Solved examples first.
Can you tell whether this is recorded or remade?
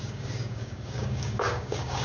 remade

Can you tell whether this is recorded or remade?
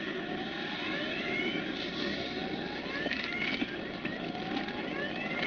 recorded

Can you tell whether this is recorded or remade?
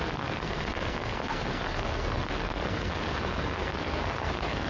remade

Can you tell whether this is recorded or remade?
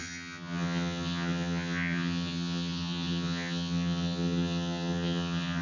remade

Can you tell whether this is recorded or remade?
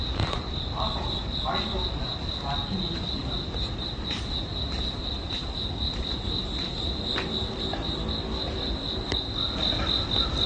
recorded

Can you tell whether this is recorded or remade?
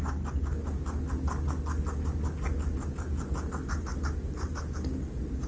recorded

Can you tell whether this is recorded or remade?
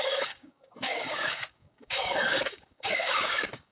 remade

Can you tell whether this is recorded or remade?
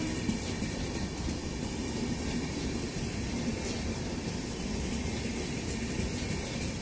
recorded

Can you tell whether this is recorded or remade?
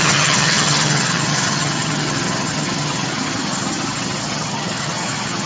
remade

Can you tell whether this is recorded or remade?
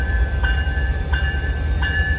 remade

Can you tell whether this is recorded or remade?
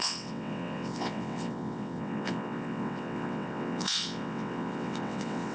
remade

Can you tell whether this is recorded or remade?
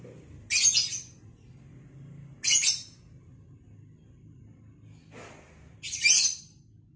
recorded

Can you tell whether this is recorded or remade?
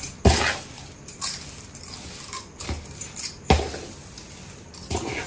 recorded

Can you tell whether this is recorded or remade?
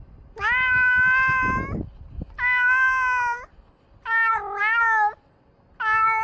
recorded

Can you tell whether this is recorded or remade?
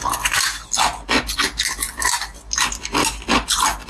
recorded